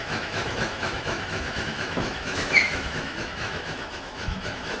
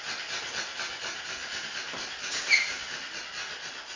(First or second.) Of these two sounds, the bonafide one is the second